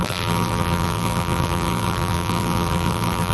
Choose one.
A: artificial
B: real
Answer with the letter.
A